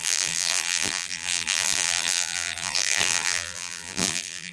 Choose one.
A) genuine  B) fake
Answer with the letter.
B